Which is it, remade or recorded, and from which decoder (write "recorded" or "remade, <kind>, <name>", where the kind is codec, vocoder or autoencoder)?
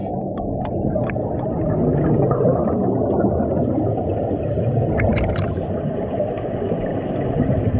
recorded